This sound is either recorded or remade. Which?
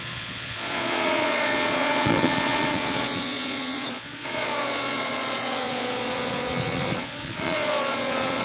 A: remade